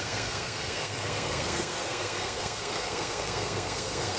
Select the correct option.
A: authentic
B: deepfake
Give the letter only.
B